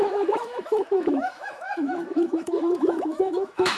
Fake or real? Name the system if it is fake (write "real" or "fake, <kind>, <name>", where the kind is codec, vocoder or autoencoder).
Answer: fake, autoencoder, DAC-VAE